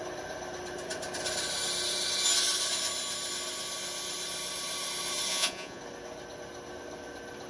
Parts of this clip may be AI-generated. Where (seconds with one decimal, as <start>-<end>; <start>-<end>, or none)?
5.3-5.8